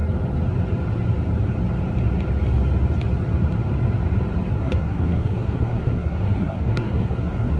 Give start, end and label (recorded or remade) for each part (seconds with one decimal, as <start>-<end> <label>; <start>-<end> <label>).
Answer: 0.0-4.6 recorded; 4.6-7.6 remade